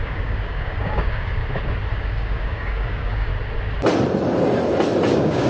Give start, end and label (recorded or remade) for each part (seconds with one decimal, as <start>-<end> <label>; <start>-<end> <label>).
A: 0.0-1.4 remade; 1.4-1.9 recorded; 1.9-3.3 remade; 3.3-5.1 recorded; 5.1-5.5 remade